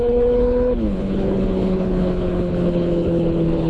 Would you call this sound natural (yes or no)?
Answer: no